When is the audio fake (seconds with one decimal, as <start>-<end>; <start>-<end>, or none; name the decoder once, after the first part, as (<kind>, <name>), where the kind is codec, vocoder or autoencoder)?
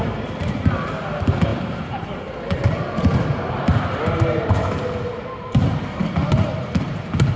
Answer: none